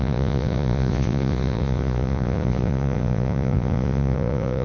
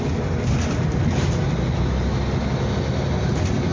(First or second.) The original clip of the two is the second